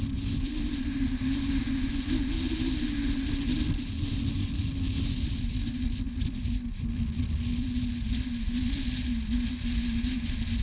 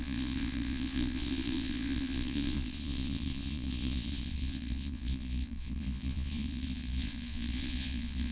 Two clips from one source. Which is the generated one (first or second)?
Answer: second